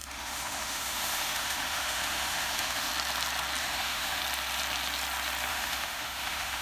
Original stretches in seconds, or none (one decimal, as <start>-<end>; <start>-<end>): 2.9-3.6; 4.2-5.5